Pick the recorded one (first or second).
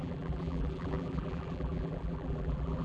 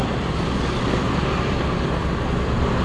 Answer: second